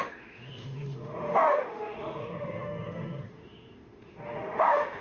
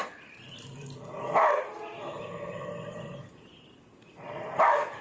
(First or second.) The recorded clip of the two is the second